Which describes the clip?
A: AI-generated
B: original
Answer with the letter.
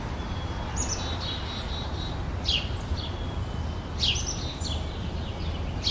B